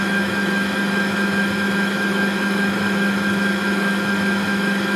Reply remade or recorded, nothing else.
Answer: remade